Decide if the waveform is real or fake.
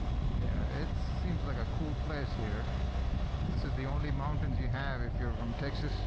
real